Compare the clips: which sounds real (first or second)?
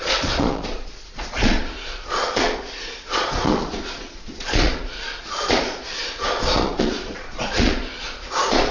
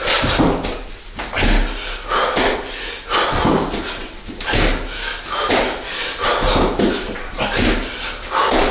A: second